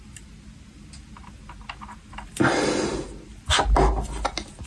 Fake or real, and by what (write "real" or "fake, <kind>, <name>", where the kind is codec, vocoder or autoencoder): real